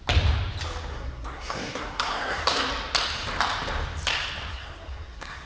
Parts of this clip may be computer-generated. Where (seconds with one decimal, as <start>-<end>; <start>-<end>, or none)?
0.9-2.7; 4.5-5.5